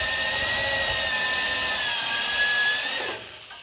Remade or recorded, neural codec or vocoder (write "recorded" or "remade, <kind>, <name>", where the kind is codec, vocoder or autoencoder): recorded